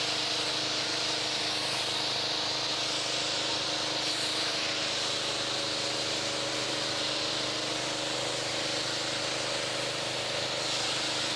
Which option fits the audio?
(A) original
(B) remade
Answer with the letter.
A